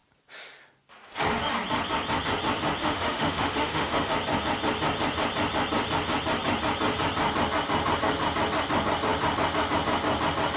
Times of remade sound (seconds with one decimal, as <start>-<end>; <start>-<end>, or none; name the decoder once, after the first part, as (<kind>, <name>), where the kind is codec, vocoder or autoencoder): 2.8-4.1 (autoencoder, DAC-VAE)